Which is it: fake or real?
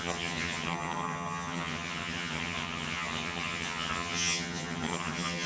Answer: fake